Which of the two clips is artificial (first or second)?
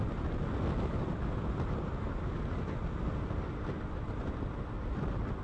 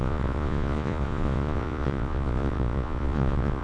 second